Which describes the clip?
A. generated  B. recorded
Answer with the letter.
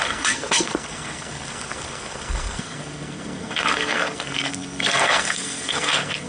A